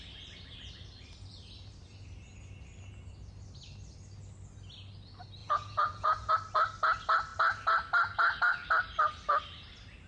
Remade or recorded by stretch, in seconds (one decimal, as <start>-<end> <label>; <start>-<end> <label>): 0.0-5.4 recorded; 5.4-6.3 remade; 6.3-10.1 recorded